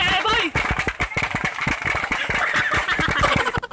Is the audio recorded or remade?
recorded